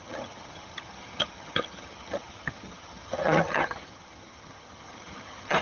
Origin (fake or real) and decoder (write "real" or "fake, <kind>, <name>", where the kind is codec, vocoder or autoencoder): fake, vocoder, HiFi-GAN